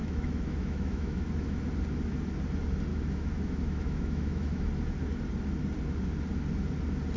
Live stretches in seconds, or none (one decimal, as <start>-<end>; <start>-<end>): 1.6-2.9; 4.7-7.2